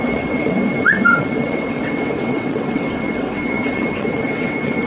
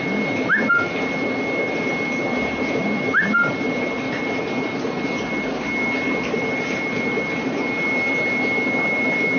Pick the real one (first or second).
second